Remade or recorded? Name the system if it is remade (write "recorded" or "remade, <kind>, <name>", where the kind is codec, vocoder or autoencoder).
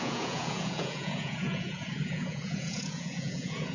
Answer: remade, vocoder, Vocos